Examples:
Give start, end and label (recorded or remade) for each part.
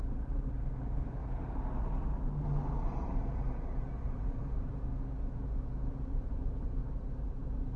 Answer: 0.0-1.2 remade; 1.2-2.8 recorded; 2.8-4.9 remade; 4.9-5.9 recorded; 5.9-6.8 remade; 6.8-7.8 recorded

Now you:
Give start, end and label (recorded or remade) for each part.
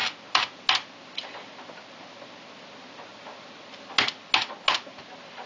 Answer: 0.0-5.5 recorded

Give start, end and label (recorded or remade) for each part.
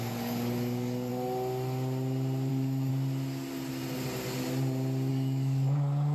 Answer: 0.0-1.1 remade; 1.1-2.5 recorded; 2.5-2.9 remade; 2.9-5.1 recorded; 5.1-6.1 remade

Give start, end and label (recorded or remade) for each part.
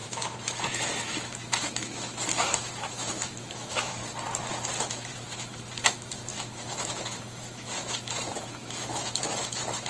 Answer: 0.0-4.0 remade; 4.0-4.8 recorded; 4.8-9.9 remade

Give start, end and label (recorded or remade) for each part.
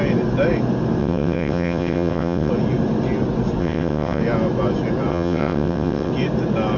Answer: 0.0-1.0 recorded; 1.0-2.5 remade; 2.5-3.6 recorded; 3.6-4.2 remade; 4.2-5.1 recorded; 5.1-6.1 remade; 6.1-6.8 recorded